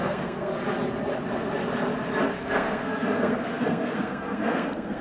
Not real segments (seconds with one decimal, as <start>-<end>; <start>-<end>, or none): 0.0-0.5; 2.5-5.0